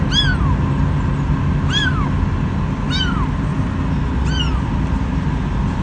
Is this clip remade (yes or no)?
no